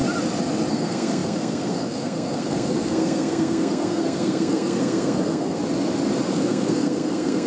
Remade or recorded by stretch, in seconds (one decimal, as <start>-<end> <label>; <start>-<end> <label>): 0.0-0.7 recorded; 0.7-5.6 remade; 5.6-6.3 recorded; 6.3-7.5 remade